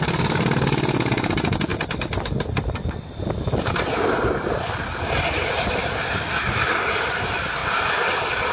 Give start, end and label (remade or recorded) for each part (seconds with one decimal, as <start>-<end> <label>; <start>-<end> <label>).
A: 0.0-8.5 recorded